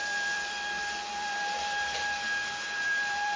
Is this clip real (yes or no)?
no